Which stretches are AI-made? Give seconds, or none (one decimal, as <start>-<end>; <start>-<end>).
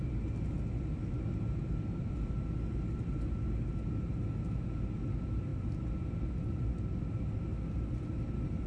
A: 5.5-7.1